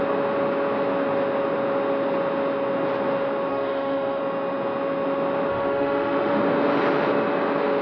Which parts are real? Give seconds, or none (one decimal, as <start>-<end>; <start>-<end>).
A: 0.0-3.5; 4.2-5.5; 6.4-7.8

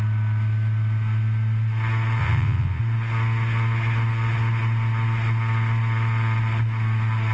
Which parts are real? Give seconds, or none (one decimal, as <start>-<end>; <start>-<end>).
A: 0.0-2.2; 2.8-7.3